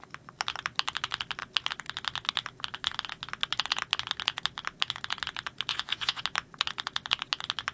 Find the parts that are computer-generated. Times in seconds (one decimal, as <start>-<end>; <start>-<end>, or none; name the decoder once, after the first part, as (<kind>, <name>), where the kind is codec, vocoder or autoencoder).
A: 5.7-6.2 (vocoder, Vocos)